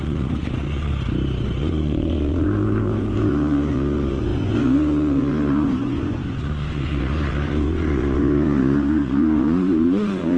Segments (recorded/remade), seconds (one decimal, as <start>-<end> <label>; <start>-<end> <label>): 0.0-0.9 remade; 0.9-1.6 recorded; 1.6-10.4 remade